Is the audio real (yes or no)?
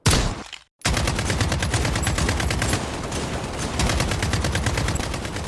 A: yes